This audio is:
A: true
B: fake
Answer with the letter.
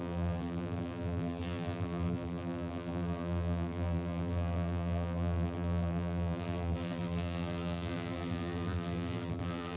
B